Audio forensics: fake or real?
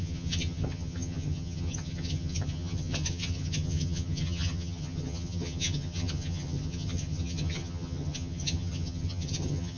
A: fake